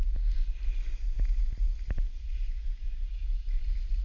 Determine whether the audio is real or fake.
real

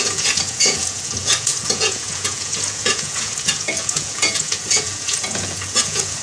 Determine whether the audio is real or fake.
fake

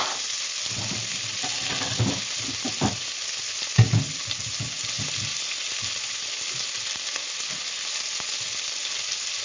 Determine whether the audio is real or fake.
real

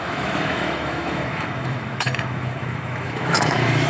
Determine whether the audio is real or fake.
fake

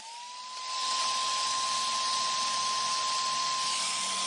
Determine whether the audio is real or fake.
real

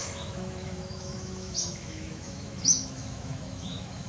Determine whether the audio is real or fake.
fake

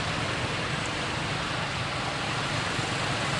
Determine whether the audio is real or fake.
real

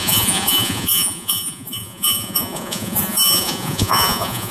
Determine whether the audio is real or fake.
fake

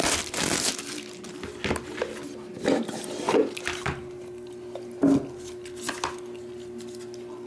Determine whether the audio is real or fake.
real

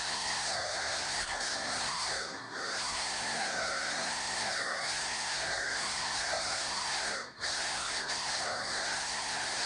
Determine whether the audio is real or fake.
fake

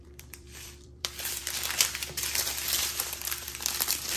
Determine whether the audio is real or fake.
fake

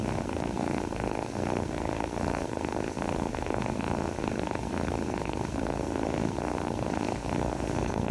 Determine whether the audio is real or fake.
fake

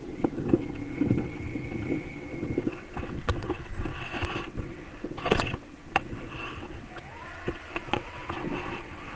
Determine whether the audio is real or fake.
fake